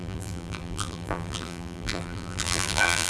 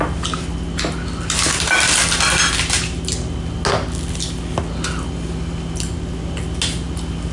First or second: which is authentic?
second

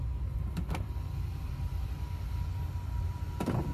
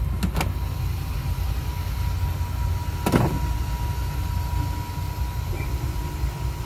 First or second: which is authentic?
second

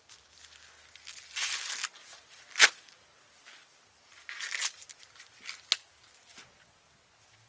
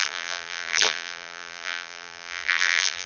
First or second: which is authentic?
first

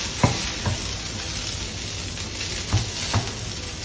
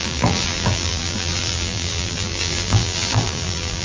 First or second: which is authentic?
first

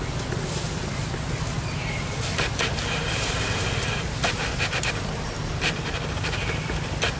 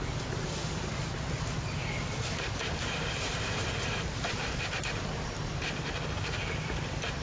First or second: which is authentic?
first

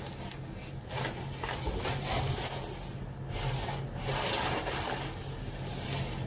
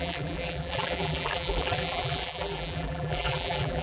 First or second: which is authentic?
first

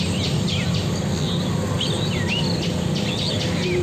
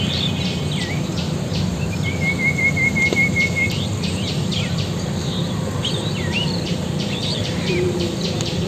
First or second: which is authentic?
first